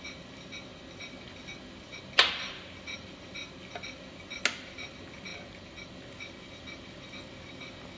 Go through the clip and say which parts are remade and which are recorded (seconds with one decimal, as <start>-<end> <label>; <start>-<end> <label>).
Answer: 0.0-8.0 recorded

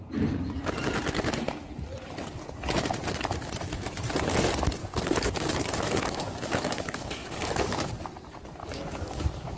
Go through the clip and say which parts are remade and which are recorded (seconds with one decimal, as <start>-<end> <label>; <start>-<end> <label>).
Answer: 0.0-4.8 recorded; 4.8-7.9 remade; 7.9-8.6 recorded; 8.6-9.6 remade

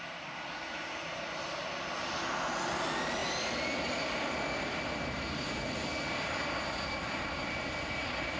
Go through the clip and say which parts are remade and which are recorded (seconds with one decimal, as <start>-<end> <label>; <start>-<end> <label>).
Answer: 0.0-8.4 recorded

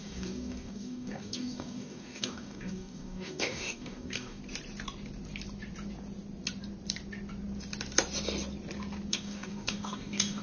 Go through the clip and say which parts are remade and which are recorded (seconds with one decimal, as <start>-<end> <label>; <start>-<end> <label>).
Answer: 0.0-4.4 remade; 4.4-9.1 recorded; 9.1-10.4 remade

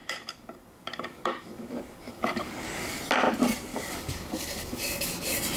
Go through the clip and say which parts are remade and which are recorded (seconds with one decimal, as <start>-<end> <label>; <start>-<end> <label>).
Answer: 0.0-3.0 remade; 3.0-3.7 recorded; 3.7-5.1 remade; 5.1-5.6 recorded

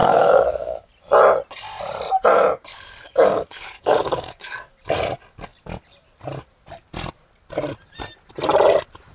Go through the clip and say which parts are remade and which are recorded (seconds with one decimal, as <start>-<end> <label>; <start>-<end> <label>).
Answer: 0.0-0.9 remade; 0.9-2.7 recorded; 2.7-4.8 remade; 4.8-9.1 recorded

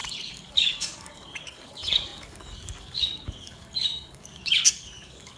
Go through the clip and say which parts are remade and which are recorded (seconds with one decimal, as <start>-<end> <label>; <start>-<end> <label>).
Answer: 0.0-5.4 remade